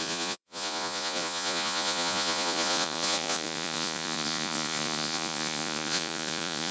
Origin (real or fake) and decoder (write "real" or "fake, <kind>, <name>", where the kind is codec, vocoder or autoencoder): fake, vocoder, Vocos